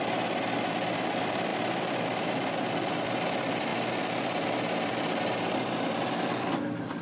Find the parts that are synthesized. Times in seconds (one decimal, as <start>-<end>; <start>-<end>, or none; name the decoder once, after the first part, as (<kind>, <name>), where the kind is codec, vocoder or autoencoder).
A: 0.0-3.7 (vocoder, BigVGAN v2); 4.2-7.0